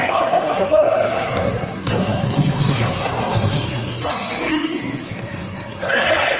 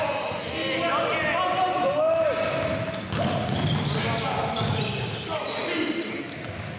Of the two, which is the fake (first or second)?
first